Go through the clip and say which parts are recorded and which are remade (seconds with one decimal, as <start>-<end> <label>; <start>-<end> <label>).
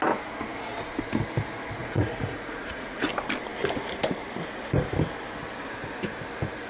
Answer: 0.0-1.8 recorded; 1.8-3.1 remade; 3.1-6.7 recorded